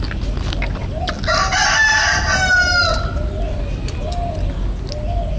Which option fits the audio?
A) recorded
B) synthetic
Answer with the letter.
A